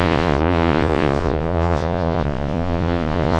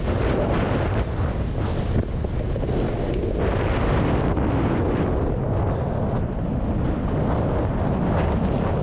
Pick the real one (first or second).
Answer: second